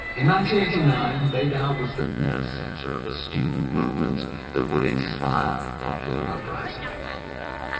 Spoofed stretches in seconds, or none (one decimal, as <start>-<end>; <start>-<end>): 2.0-6.3; 7.0-7.8